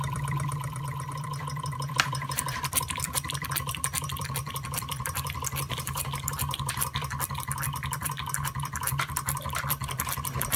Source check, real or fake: fake